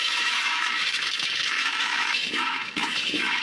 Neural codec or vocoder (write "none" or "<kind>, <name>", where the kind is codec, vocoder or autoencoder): autoencoder, DAC-VAE